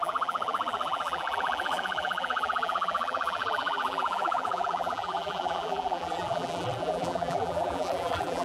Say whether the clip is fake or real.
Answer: fake